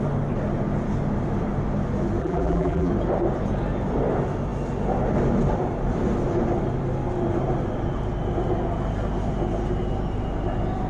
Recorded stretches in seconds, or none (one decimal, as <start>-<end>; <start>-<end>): 0.0-2.2; 2.9-10.9